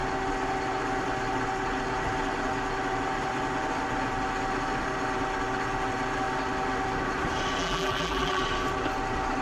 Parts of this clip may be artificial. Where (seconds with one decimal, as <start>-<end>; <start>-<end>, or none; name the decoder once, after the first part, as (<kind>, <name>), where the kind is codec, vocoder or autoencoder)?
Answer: 7.6-8.4 (vocoder, BigVGAN v2)